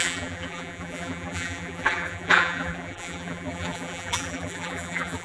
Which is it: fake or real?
fake